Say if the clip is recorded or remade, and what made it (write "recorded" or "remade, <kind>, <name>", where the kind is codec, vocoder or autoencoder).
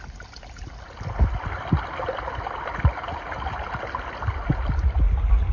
recorded